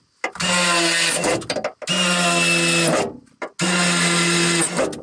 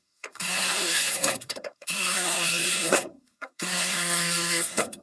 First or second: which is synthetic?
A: second